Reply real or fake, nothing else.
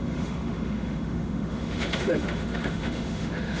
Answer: fake